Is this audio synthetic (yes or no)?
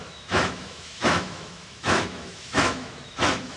yes